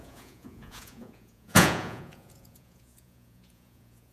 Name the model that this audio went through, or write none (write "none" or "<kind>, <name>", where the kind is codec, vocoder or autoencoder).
vocoder, Vocos